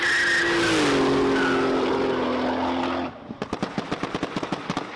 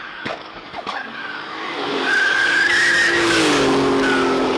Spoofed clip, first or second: second